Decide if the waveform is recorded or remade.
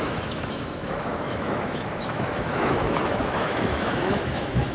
remade